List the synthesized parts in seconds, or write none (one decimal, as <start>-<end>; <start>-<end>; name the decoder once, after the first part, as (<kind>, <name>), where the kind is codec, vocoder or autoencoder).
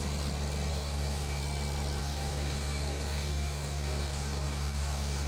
0.7-1.4 (codec, DAC); 2.0-5.3